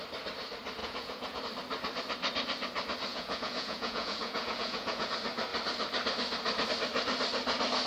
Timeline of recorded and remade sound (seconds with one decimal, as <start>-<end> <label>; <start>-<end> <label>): 0.0-0.8 recorded; 0.8-1.4 remade; 1.4-3.1 recorded; 3.1-5.1 remade; 5.1-7.9 recorded